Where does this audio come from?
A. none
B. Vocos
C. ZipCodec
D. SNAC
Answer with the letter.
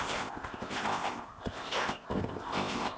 C